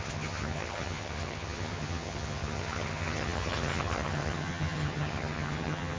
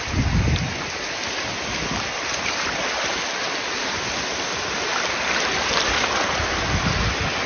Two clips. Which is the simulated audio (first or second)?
first